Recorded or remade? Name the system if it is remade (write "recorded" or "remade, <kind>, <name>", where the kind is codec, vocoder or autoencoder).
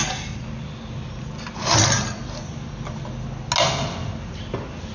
recorded